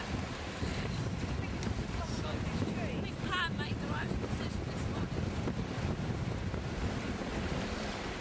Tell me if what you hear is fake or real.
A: real